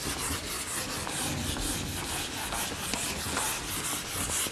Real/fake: real